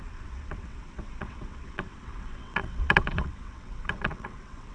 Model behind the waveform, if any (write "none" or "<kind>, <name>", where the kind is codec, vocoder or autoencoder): vocoder, WaveNeXt